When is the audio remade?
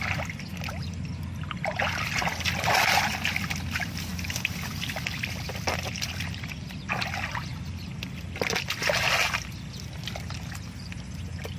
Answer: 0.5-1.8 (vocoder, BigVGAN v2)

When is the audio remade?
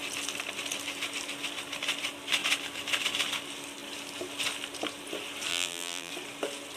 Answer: 5.5-6.1 (vocoder, BigVGAN v2)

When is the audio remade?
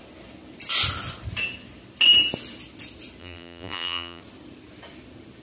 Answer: 3.2-4.2 (vocoder, BigVGAN v2)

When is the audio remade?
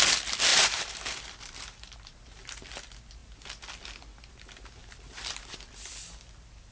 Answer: 0.5-2.2 (vocoder, BigVGAN v2); 4.8-5.7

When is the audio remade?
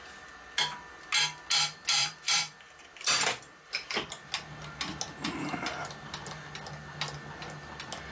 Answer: 2.0-4.1 (vocoder, BigVGAN v2)